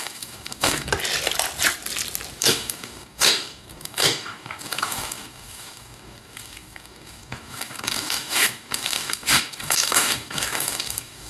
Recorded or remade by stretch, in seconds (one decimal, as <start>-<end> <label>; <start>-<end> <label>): 0.0-0.9 remade; 0.9-2.4 recorded; 2.4-11.3 remade